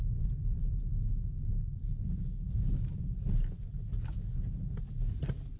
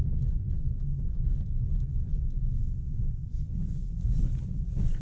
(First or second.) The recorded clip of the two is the first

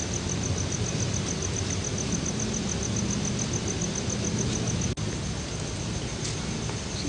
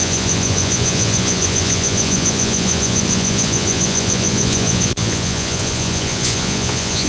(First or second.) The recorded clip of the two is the first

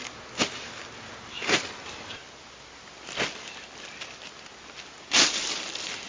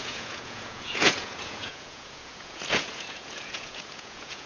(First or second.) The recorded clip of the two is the first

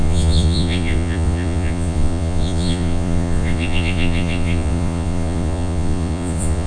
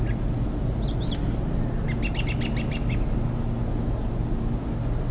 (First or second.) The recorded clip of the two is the second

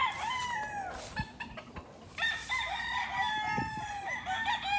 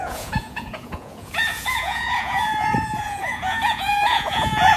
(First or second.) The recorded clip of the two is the first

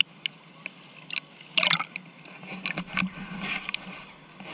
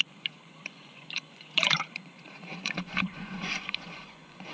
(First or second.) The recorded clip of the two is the first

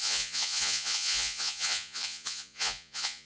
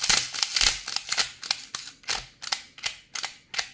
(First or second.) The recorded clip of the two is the second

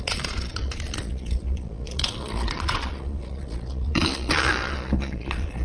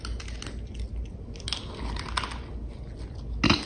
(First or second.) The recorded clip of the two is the second